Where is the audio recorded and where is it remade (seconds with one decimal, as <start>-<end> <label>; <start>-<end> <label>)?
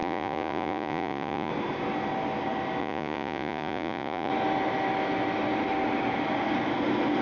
0.0-1.5 remade; 1.5-2.8 recorded; 2.8-4.3 remade; 4.3-7.2 recorded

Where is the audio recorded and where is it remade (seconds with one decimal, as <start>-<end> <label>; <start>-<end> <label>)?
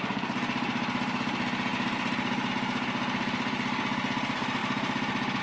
0.0-5.4 recorded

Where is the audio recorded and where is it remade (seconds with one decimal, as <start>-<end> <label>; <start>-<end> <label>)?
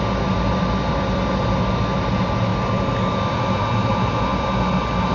0.0-5.1 recorded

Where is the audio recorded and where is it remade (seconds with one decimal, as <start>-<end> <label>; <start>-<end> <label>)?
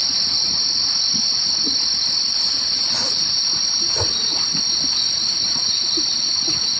0.0-6.8 recorded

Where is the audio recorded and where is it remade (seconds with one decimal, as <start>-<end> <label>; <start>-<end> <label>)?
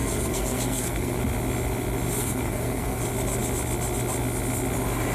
0.0-1.2 remade; 1.2-2.2 recorded; 2.2-3.0 remade; 3.0-5.1 recorded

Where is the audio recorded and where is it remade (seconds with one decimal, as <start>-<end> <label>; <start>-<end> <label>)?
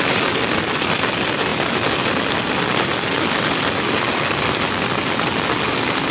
0.0-6.1 recorded